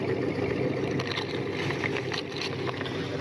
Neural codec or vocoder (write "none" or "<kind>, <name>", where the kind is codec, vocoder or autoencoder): none